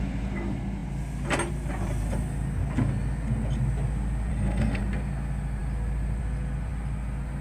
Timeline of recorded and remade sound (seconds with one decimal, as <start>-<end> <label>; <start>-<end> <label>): 0.0-4.3 recorded; 4.3-4.8 remade; 4.8-7.4 recorded